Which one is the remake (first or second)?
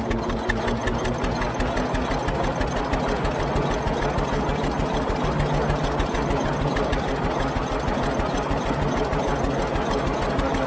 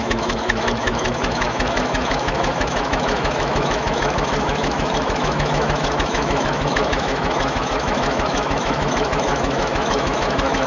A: second